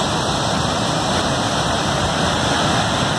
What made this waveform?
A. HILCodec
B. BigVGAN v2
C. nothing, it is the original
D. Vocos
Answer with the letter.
C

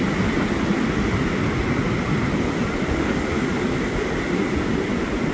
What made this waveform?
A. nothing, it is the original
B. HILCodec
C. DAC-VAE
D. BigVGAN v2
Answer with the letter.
A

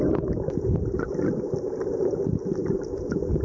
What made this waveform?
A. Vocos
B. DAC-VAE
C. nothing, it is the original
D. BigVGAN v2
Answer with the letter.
C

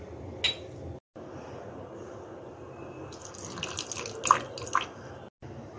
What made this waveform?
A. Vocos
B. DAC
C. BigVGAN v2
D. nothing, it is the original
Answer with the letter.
D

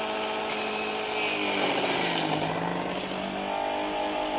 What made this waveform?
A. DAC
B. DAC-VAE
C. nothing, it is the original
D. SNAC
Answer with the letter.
C